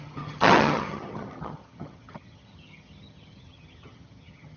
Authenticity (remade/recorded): remade